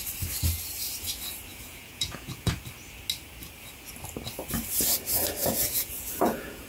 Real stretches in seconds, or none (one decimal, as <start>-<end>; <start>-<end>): 0.0-1.5; 2.5-5.4